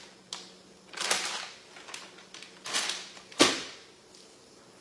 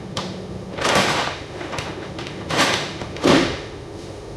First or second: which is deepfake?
second